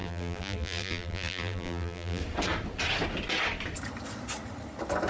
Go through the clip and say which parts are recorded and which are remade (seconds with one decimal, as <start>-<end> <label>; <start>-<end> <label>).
0.0-2.2 remade; 2.2-5.1 recorded

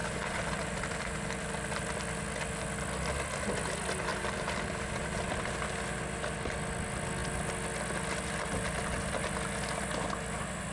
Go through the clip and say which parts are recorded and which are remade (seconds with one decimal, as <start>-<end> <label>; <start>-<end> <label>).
0.0-1.7 remade; 1.7-4.1 recorded; 4.1-5.4 remade; 5.4-10.7 recorded

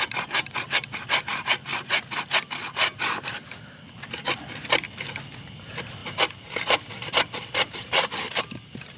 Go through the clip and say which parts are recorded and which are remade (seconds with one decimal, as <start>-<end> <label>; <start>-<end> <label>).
0.0-6.0 recorded; 6.0-8.4 remade; 8.4-9.0 recorded